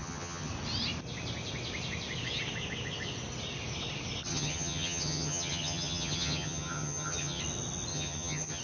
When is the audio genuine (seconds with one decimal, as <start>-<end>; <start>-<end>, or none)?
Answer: 0.5-4.3; 7.4-7.9